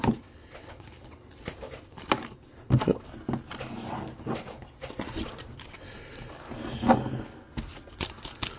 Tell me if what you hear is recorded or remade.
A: recorded